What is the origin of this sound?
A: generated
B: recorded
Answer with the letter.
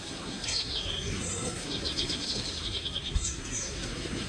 A